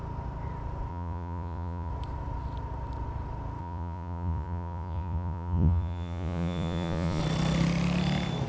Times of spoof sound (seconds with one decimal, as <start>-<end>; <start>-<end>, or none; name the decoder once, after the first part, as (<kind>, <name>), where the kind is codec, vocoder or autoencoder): 0.9-1.9 (vocoder, Vocos); 3.6-7.2